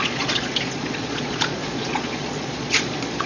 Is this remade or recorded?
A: remade